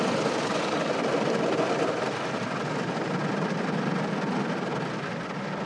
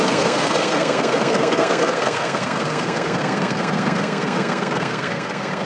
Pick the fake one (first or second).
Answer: second